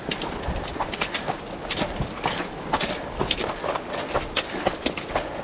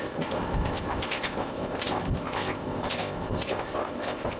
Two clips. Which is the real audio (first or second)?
first